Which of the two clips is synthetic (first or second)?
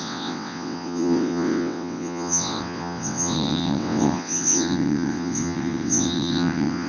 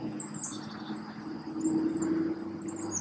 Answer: first